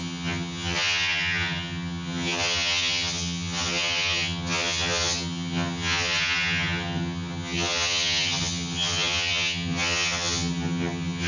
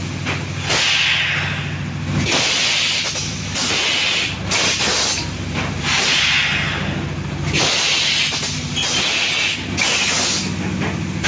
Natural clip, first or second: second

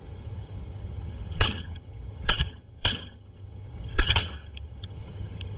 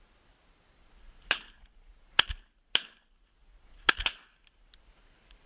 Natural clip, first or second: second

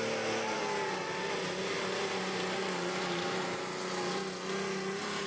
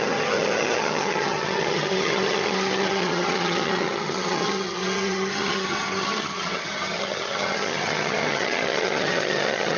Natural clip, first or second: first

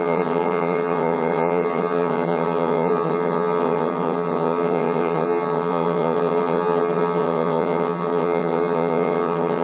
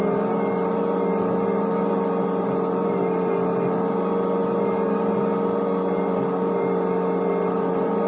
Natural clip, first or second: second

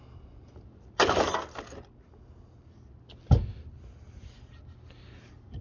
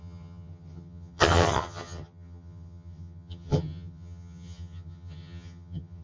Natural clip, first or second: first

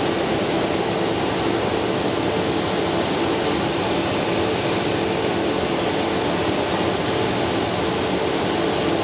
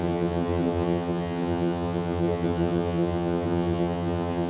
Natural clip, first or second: first